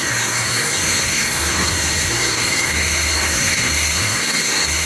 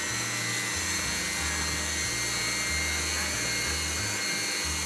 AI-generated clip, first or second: first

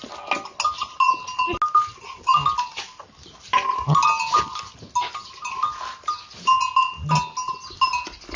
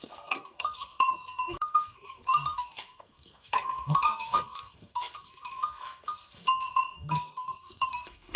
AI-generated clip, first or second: second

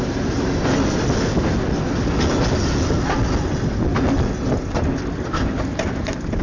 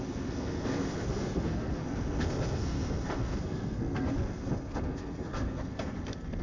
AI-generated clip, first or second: second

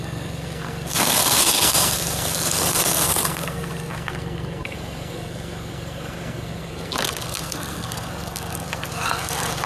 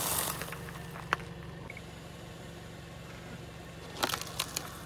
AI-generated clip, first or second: first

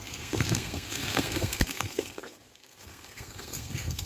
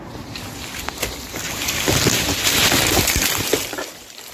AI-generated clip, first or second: first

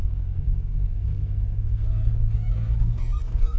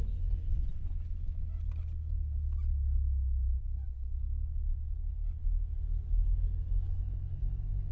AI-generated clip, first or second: first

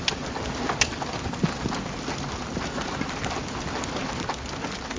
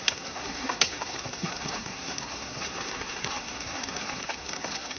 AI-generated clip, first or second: second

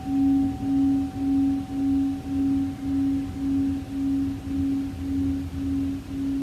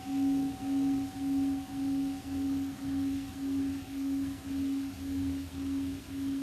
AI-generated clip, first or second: second